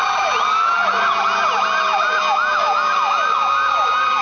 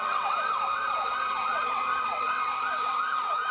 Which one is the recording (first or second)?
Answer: first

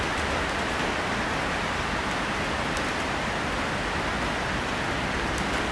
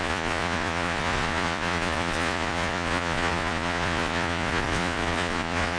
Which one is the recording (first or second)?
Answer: first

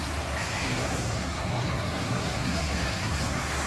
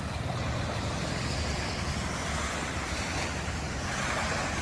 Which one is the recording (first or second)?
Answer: second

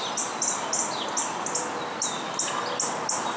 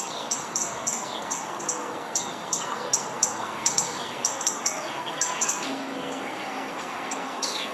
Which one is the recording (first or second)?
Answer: first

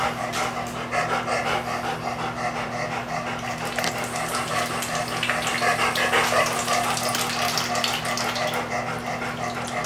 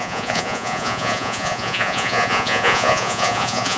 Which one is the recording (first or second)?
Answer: first